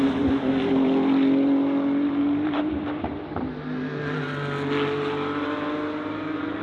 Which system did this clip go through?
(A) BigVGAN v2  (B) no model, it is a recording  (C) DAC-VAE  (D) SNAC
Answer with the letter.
B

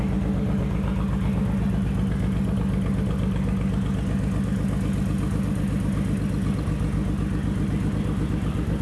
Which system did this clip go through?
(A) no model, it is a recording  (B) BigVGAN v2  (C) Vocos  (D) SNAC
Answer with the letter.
A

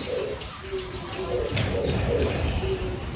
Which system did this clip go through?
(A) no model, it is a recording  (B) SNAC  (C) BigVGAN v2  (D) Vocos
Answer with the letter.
A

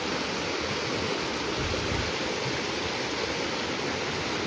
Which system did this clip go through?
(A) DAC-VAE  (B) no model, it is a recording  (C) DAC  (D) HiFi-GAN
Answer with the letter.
B